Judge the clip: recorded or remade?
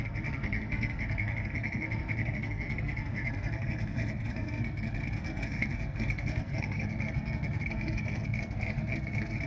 remade